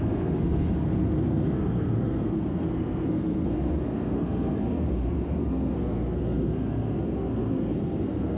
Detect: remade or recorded remade